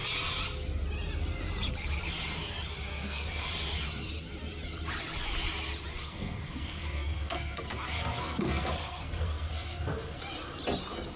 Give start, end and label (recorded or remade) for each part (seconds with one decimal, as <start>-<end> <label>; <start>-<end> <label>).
0.0-2.9 recorded; 2.9-3.5 remade; 3.5-6.0 recorded; 6.0-10.2 remade; 10.2-11.2 recorded